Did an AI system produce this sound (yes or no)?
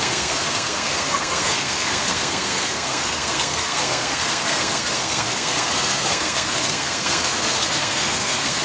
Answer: yes